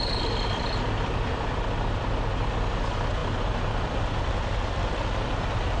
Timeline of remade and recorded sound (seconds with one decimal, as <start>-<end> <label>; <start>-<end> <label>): 0.0-5.8 remade